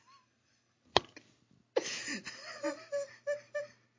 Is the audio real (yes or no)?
yes